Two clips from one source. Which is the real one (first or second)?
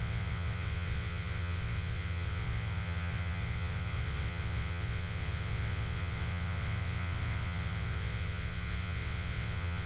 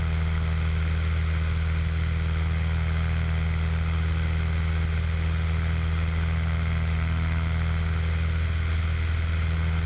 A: second